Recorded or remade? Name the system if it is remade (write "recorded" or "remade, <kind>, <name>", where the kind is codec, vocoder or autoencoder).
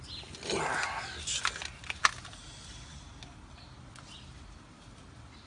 recorded